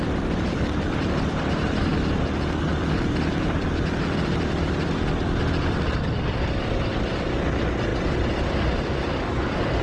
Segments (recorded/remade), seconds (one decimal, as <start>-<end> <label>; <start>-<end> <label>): 0.0-1.9 remade; 1.9-2.7 recorded; 2.7-9.8 remade